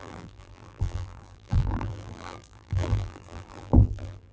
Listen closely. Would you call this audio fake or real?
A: fake